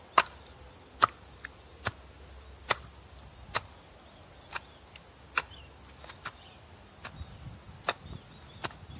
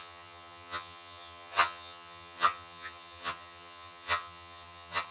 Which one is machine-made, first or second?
second